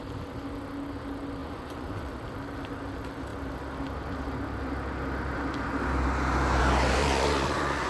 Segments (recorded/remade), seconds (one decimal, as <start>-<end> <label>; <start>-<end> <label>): 0.0-1.4 recorded; 1.4-2.1 remade; 2.1-7.0 recorded; 7.0-7.9 remade